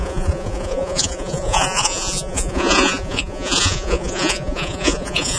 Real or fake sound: fake